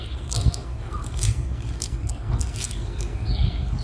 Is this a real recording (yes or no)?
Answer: no